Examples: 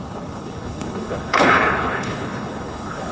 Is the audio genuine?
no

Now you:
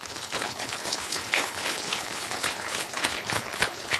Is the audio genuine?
no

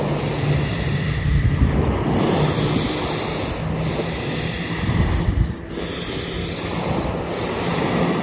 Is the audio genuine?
yes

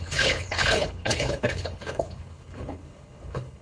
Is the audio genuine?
no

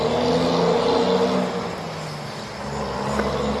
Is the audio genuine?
yes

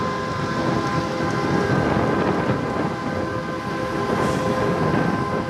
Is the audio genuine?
yes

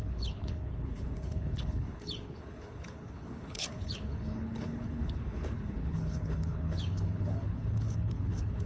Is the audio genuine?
no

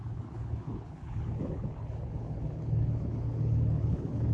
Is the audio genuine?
no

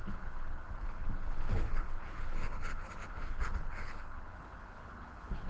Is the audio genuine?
no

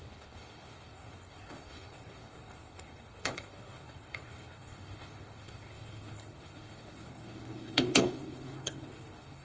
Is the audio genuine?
no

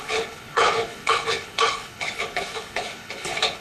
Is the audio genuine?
no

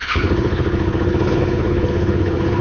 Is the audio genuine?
no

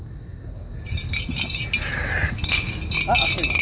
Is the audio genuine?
yes